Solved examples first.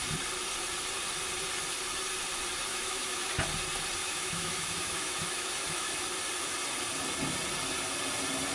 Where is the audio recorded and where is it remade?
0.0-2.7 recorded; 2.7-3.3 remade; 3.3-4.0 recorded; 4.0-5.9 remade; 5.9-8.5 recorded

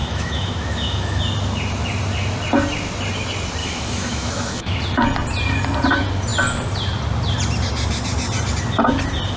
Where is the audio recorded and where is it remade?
0.0-1.2 remade; 1.2-3.6 recorded; 3.6-4.8 remade; 4.8-9.4 recorded

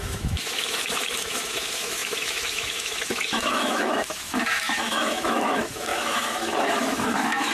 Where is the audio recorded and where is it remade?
0.0-7.5 remade

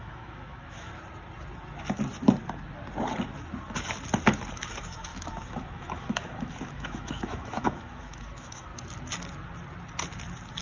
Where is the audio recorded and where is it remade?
0.0-0.9 remade; 0.9-4.5 recorded; 4.5-8.7 remade; 8.7-10.6 recorded